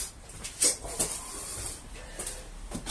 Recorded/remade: recorded